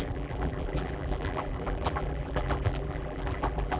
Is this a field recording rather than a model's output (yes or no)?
no